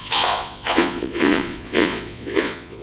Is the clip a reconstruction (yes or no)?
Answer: yes